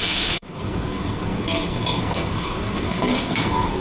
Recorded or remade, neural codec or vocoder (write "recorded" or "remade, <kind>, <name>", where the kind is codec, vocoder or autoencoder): remade, codec, SNAC